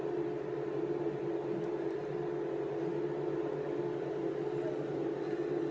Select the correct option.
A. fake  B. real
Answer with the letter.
B